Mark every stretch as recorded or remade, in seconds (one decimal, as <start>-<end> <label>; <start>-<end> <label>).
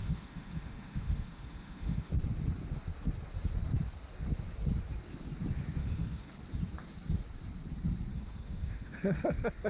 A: 0.0-2.1 remade; 2.1-5.8 recorded; 5.8-6.3 remade; 6.3-8.1 recorded; 8.1-8.9 remade; 8.9-9.7 recorded